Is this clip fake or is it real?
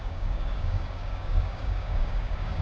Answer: fake